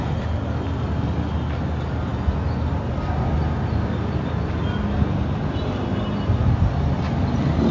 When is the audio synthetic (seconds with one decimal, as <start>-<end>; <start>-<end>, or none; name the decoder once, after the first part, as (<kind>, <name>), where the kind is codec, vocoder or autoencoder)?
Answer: none